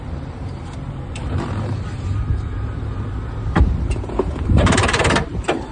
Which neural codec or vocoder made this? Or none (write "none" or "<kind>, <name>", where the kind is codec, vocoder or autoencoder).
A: vocoder, BigVGAN v2